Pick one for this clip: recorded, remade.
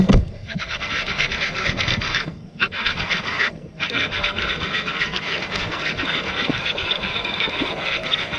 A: remade